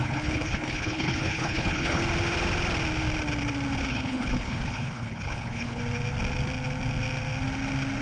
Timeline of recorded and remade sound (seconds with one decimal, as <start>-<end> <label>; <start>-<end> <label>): 0.0-2.0 remade; 2.0-3.9 recorded; 3.9-5.8 remade; 5.8-8.0 recorded